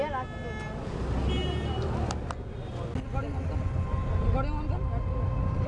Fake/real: real